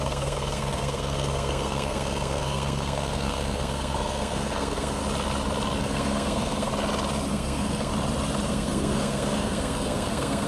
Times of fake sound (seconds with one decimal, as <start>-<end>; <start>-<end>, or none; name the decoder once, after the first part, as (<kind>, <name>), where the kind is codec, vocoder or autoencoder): 0.0-5.0 (codec, SNAC); 5.8-6.7; 7.3-7.9; 8.5-10.5